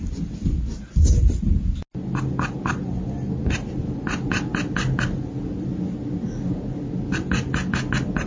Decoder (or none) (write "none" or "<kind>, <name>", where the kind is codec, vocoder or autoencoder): none